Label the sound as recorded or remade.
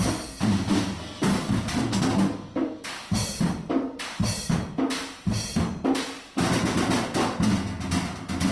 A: recorded